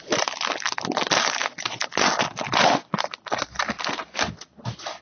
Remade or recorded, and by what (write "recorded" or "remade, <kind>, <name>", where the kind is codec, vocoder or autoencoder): recorded